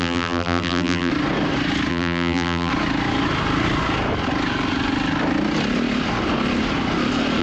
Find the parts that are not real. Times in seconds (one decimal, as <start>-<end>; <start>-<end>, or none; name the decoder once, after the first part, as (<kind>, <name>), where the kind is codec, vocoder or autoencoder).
0.0-1.1 (vocoder, BigVGAN v2); 1.9-2.7